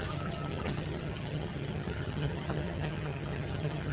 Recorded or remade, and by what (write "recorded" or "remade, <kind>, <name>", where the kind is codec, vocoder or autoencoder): remade, vocoder, HiFi-GAN